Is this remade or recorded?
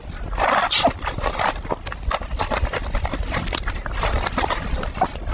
recorded